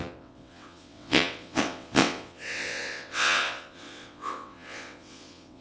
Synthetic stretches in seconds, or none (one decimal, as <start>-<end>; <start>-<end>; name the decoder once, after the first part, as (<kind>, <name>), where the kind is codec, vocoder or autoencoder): 0.0-5.6 (vocoder, WaveNeXt)